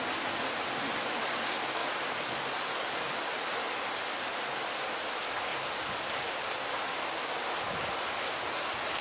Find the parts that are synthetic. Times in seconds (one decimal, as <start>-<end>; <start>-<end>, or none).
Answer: 1.8-3.6